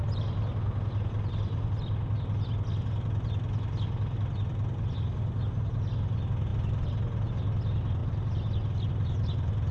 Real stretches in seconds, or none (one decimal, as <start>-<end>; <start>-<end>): 0.0-9.7